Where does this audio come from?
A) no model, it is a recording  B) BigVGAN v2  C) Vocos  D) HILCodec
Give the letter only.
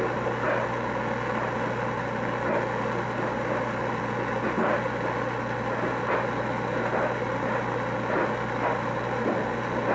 A